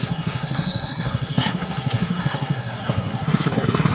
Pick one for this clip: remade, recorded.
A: remade